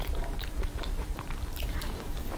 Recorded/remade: remade